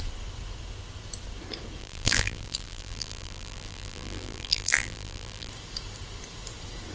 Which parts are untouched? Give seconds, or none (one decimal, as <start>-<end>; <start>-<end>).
0.0-1.8; 5.5-6.9

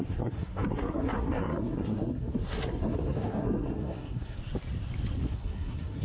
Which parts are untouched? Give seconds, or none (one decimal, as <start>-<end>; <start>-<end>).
4.4-5.2